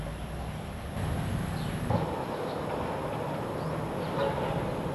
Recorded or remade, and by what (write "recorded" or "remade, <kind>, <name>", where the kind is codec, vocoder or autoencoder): recorded